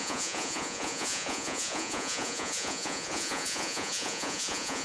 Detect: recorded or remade remade